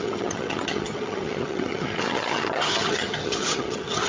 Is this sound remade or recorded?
remade